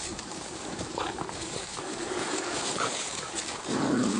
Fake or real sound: fake